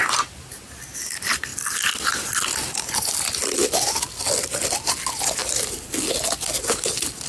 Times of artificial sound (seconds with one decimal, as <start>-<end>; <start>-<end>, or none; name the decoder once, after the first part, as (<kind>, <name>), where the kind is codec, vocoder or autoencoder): 5.4-6.1 (vocoder, BigVGAN v2)